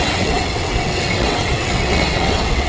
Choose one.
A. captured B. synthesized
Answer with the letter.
B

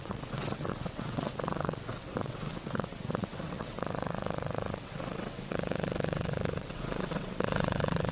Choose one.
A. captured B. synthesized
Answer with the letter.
B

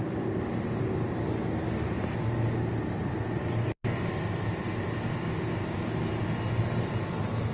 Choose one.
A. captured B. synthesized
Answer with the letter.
A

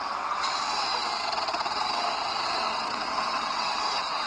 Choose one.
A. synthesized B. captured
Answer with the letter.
A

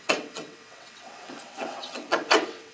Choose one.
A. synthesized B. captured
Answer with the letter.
A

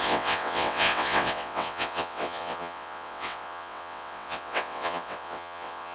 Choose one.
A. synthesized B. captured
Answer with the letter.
A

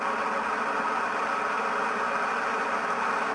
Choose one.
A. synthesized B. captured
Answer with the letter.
B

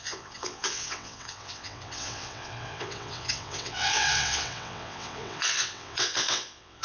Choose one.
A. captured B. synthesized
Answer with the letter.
B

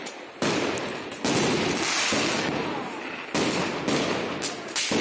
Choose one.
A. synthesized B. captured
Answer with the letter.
B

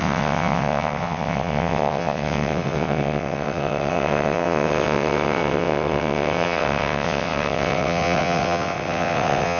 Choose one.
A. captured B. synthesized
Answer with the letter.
B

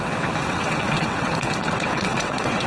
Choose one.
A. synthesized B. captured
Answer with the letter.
A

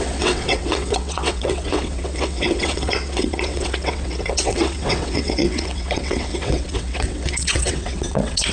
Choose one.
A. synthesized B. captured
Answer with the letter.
A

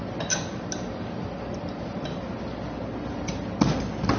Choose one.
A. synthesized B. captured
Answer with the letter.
B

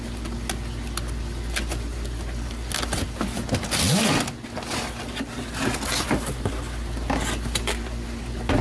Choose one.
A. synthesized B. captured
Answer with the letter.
B